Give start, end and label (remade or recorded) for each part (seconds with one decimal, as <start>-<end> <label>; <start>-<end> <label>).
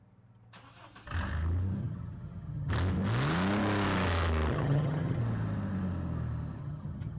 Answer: 0.0-1.8 recorded; 1.8-2.7 remade; 2.7-4.5 recorded; 4.5-5.2 remade; 5.2-6.6 recorded; 6.6-7.2 remade